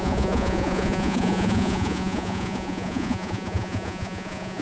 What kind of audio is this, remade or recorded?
remade